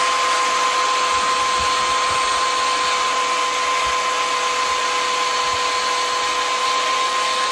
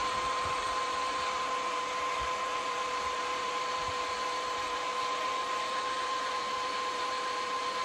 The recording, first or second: first